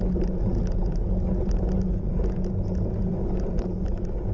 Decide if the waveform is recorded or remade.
recorded